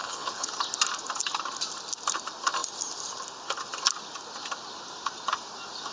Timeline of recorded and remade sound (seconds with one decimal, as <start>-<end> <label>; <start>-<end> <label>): 0.0-0.5 remade; 0.5-5.9 recorded